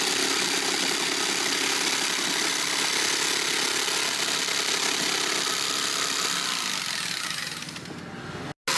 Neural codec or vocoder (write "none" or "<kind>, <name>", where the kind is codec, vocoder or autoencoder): none